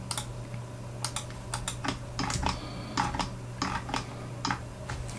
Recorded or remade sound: recorded